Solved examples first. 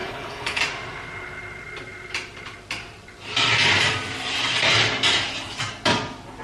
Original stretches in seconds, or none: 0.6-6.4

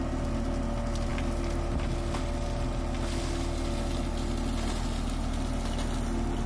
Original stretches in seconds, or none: 0.0-6.5

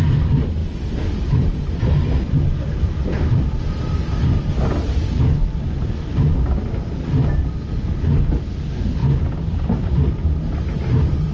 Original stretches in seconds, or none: 0.0-11.3

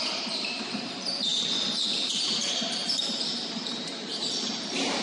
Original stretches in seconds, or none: 1.3-2.0

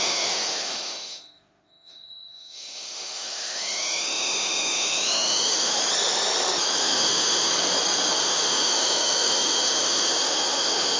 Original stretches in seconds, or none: 5.8-6.8; 7.5-8.2

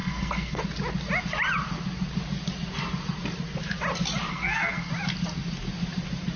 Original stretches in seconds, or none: 0.6-4.3; 4.9-6.4

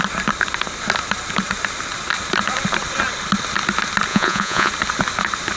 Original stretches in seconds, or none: 0.0-4.1; 4.7-5.6

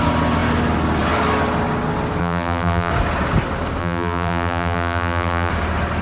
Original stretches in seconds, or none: 0.0-2.2; 2.9-3.8; 5.5-6.0